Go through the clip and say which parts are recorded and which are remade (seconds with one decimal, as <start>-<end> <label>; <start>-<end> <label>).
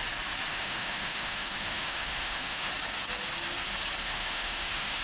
0.0-0.5 recorded; 0.5-2.7 remade; 2.7-4.0 recorded; 4.0-5.0 remade